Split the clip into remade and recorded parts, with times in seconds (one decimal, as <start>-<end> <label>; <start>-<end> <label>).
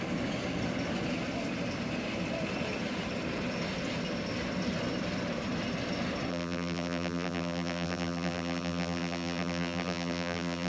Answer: 0.0-6.3 recorded; 6.3-10.7 remade